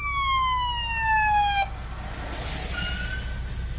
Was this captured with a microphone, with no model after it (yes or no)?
yes